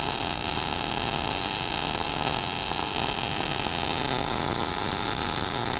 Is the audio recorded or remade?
recorded